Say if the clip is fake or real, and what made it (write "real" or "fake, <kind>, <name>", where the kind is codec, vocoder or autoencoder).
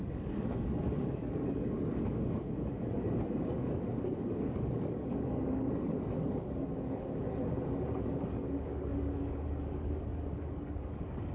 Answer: fake, codec, DAC